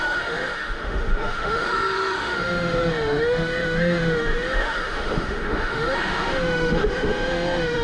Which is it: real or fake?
fake